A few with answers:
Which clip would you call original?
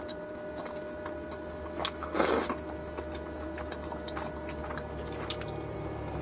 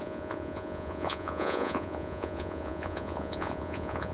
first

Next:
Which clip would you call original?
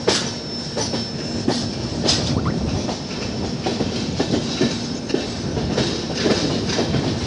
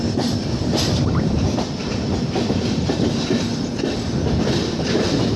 first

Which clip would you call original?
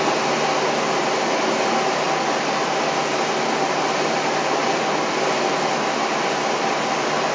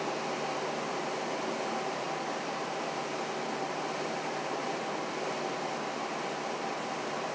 first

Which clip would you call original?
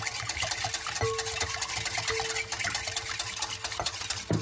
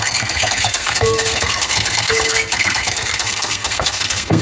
first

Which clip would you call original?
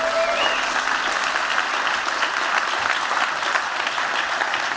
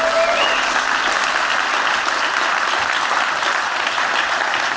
first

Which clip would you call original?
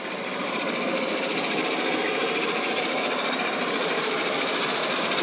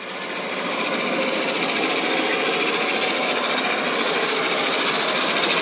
second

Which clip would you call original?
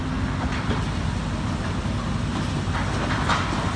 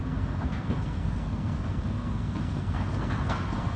first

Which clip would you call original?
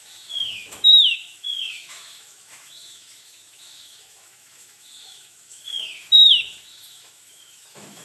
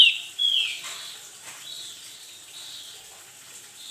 second